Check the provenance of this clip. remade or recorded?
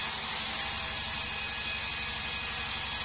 recorded